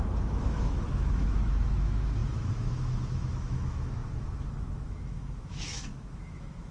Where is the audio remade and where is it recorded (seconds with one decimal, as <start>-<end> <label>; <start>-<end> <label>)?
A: 0.0-6.7 remade